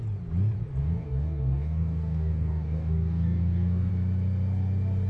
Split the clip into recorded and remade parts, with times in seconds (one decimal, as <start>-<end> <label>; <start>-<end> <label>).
0.0-0.8 recorded; 0.8-3.9 remade; 3.9-5.1 recorded